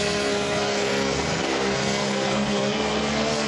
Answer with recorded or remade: remade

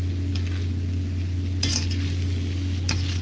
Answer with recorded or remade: recorded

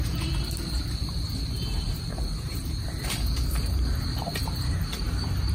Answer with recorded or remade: remade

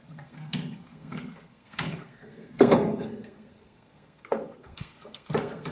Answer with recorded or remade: remade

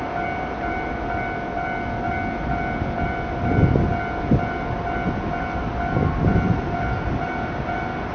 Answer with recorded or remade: recorded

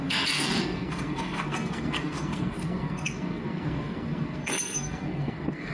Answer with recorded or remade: remade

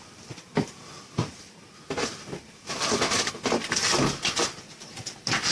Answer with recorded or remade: remade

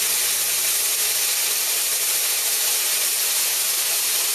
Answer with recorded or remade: recorded